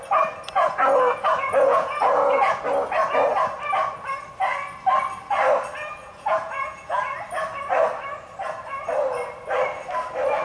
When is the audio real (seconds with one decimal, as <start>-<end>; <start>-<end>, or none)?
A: 0.0-0.6; 2.6-6.0; 7.0-10.4

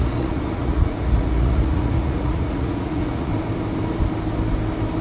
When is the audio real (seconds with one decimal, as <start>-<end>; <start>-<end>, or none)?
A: 3.3-5.0

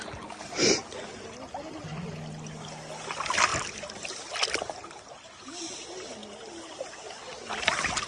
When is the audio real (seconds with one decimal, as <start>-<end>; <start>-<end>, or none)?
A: 0.0-8.1

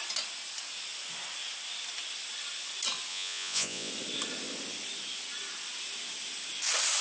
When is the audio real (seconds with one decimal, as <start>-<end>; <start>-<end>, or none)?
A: 0.0-3.1; 3.9-7.0

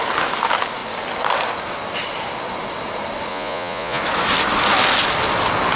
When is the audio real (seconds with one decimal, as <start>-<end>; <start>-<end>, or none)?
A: 0.0-3.3; 4.0-5.8

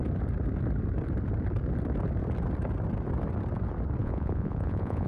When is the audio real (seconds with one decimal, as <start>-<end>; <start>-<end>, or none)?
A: 0.0-4.0

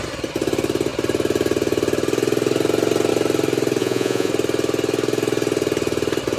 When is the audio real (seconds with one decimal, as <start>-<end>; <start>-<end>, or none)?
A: 0.0-3.8; 4.3-6.4

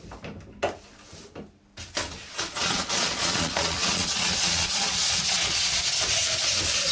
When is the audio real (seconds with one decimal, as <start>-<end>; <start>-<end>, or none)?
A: 0.0-2.0; 6.1-6.9